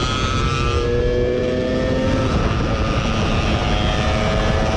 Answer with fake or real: real